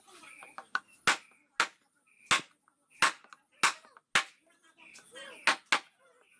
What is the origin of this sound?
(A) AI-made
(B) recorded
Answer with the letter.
B